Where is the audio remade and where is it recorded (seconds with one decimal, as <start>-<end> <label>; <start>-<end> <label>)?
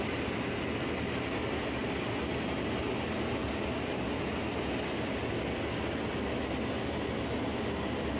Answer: 0.0-3.4 recorded; 3.4-4.0 remade; 4.0-8.2 recorded